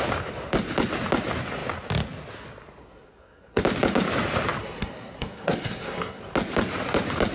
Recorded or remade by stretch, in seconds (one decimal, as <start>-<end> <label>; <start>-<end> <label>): 0.0-2.8 recorded; 2.8-3.6 remade; 3.6-4.6 recorded; 4.6-6.2 remade; 6.2-7.3 recorded